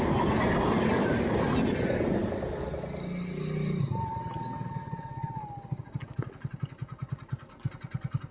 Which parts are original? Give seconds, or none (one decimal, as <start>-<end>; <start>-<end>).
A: 0.0-8.3